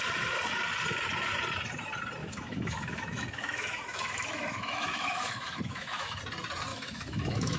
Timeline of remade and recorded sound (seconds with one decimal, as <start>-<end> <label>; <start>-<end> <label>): 0.0-2.2 recorded; 2.2-6.2 remade; 6.2-6.7 recorded; 6.7-7.6 remade